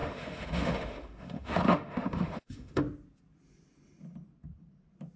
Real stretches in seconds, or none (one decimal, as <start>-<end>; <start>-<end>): 2.8-5.2

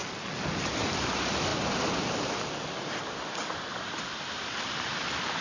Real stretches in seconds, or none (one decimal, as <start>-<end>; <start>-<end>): 0.0-5.4

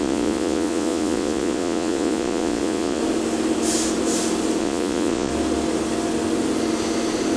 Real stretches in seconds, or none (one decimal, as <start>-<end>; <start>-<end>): 3.0-4.6; 5.3-7.4

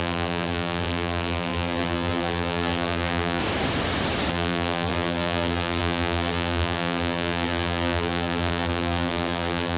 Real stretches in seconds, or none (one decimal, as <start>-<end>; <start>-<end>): 3.4-4.3